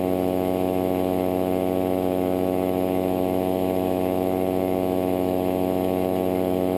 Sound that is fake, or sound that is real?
fake